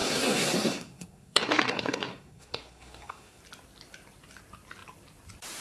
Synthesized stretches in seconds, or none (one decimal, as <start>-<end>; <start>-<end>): 0.0-3.4